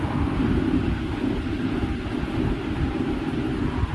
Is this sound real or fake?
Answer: real